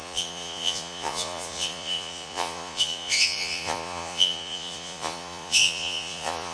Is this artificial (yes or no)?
yes